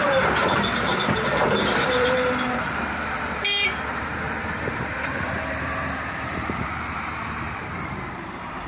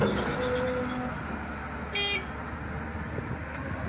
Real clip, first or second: second